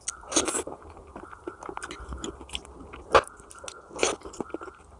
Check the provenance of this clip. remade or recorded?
recorded